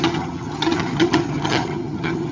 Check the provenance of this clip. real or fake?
fake